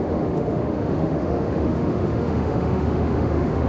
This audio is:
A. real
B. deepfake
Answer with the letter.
B